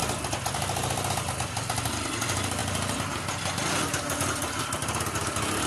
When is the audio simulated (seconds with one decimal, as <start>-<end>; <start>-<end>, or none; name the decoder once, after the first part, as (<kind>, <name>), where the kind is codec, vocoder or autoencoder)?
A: none